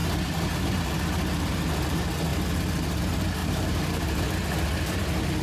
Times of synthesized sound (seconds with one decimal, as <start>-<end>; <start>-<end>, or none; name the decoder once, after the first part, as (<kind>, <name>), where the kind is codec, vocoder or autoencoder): 3.4-4.2 (vocoder, BigVGAN v2)